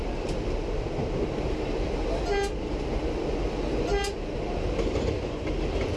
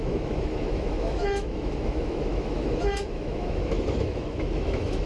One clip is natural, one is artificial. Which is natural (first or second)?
first